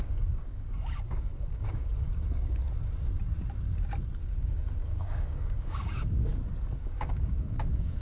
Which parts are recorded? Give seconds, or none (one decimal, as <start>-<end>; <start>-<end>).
2.6-4.2; 6.3-6.9